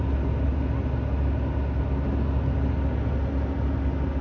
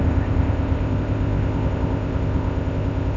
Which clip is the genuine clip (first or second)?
first